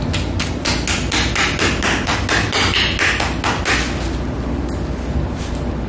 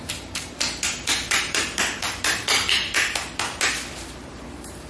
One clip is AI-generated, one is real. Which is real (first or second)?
first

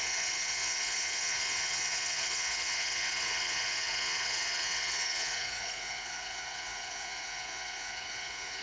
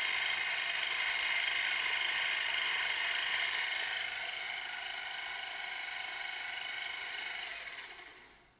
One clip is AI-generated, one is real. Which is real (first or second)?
second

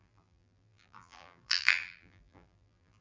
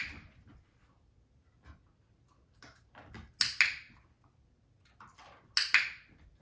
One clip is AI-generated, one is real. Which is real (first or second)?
second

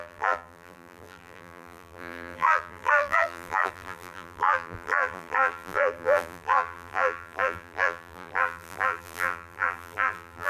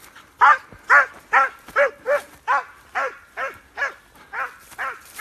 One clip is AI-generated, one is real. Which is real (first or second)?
second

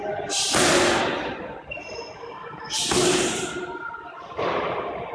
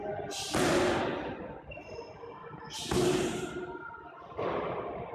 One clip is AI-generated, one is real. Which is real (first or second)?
second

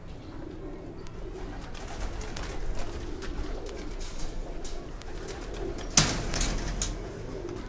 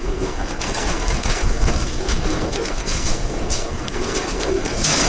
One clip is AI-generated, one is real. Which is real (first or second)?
first